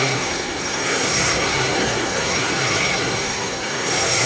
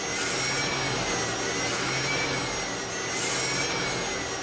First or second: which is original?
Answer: second